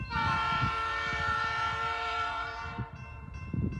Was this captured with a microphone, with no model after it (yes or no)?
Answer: no